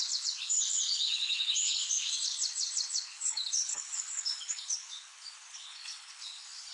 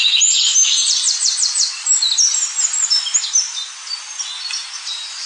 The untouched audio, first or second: second